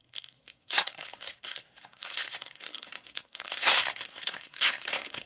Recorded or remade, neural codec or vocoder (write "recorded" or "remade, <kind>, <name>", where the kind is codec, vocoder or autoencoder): remade, codec, SNAC